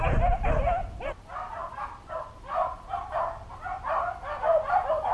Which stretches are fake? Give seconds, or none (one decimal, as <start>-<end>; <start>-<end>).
none